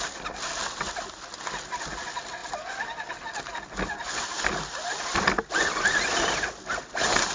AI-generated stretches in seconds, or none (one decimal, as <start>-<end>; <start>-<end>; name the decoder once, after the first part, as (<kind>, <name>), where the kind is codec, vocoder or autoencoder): none